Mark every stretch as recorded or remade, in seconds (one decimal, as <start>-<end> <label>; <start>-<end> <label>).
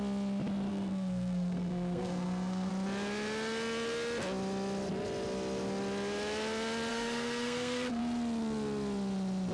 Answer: 0.0-0.7 recorded; 0.7-2.7 remade; 2.7-6.9 recorded; 6.9-8.0 remade; 8.0-9.5 recorded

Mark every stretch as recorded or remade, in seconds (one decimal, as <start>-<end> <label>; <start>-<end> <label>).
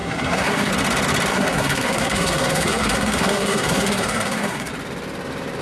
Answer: 0.0-0.7 remade; 0.7-1.3 recorded; 1.3-4.7 remade; 4.7-5.6 recorded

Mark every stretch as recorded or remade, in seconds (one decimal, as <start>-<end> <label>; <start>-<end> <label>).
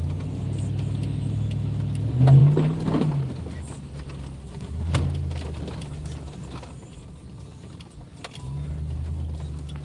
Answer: 0.0-4.4 recorded; 4.4-4.9 remade; 4.9-9.8 recorded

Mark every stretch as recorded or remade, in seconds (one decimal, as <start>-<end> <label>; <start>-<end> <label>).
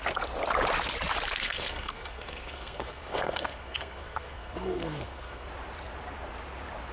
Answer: 0.0-1.4 recorded; 1.4-5.5 remade; 5.5-6.9 recorded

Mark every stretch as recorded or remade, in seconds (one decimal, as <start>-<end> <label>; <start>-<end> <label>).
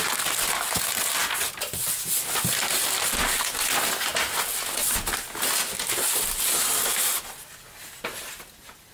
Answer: 0.0-8.9 recorded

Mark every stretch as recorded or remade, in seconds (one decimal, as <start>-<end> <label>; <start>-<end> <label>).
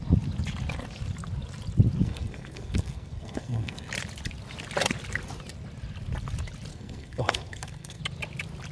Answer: 0.0-2.0 recorded; 2.0-3.9 remade; 3.9-6.7 recorded; 6.7-8.0 remade; 8.0-8.7 recorded